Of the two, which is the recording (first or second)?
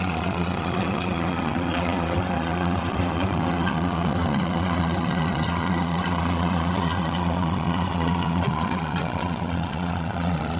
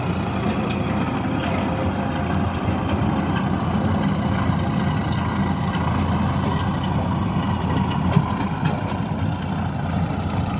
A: second